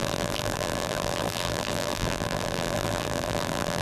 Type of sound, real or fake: fake